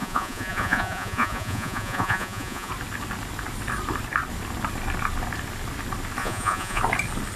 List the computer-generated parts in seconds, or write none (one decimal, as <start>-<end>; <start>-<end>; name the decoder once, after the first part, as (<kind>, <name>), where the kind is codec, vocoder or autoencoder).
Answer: 0.0-2.7 (vocoder, Vocos); 6.2-6.8